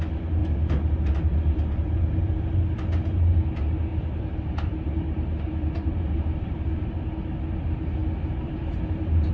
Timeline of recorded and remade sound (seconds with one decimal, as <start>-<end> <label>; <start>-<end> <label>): 0.0-0.4 recorded; 0.4-2.6 remade; 2.6-3.9 recorded; 3.9-6.9 remade; 6.9-8.0 recorded; 8.0-9.3 remade